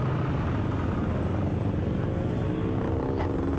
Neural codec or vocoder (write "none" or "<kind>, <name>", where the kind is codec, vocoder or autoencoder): none